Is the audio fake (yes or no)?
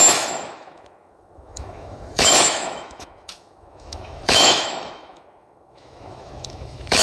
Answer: yes